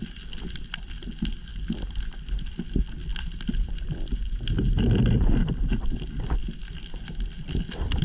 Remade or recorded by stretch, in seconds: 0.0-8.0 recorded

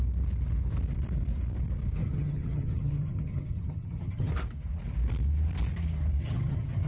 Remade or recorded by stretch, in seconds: 0.0-2.0 recorded; 2.0-4.3 remade; 4.3-6.2 recorded; 6.2-6.9 remade

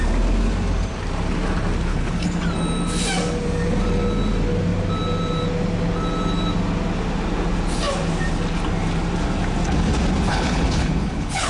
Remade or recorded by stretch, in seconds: 0.0-1.9 recorded; 1.9-2.4 remade; 2.4-10.3 recorded; 10.3-11.5 remade

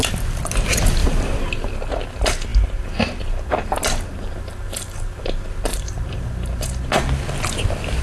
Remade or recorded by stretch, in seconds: 0.0-1.0 recorded; 1.0-1.7 remade; 1.7-4.1 recorded; 4.1-5.2 remade; 5.2-5.7 recorded; 5.7-6.8 remade; 6.8-8.0 recorded

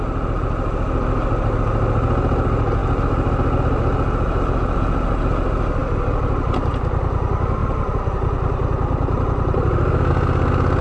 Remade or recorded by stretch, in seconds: 0.0-5.8 recorded; 5.8-6.7 remade; 6.7-10.8 recorded

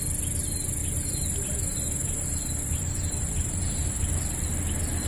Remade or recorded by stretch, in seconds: 0.0-0.8 recorded; 0.8-3.9 remade; 3.9-5.1 recorded

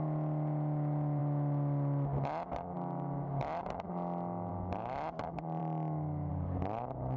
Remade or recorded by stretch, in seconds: 0.0-7.2 recorded

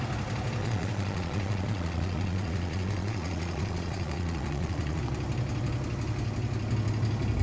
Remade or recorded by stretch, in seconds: 0.0-0.6 recorded; 0.6-5.0 remade; 5.0-7.4 recorded